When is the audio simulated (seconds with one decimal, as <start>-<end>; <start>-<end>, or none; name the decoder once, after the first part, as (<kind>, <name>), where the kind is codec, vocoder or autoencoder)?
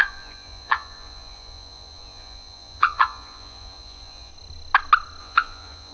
0.0-4.3 (vocoder, Vocos); 5.2-5.9